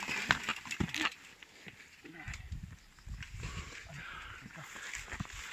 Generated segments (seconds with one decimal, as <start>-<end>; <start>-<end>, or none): none